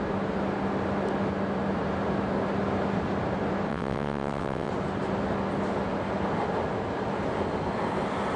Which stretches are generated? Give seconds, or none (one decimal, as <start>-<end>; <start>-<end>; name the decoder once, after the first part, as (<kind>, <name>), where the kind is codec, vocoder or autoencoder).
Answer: 3.7-4.7 (vocoder, WaveNeXt)